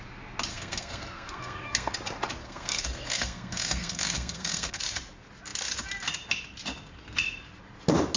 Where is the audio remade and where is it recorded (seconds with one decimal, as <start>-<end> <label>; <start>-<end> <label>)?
0.0-0.5 recorded; 0.5-1.9 remade; 1.9-2.4 recorded; 2.4-4.8 remade; 4.8-8.2 recorded